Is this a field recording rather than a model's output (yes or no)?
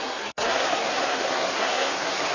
no